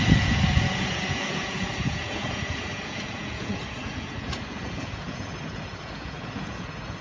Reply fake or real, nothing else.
fake